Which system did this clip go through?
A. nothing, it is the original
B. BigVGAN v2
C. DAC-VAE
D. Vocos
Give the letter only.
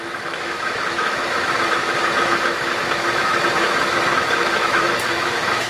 C